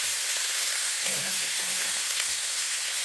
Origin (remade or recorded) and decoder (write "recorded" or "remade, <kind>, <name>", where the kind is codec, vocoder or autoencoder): remade, codec, SNAC